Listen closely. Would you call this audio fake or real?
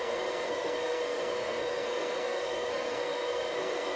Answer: fake